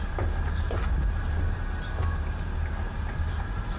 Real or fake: real